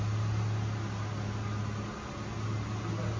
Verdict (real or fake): real